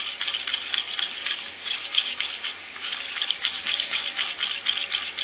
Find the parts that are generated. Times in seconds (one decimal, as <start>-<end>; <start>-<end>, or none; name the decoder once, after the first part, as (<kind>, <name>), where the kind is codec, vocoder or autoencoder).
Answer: 1.2-4.3 (codec, DAC)